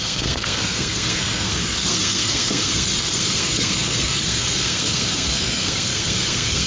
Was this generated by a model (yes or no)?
yes